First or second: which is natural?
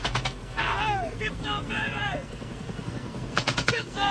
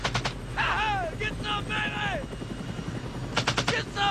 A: second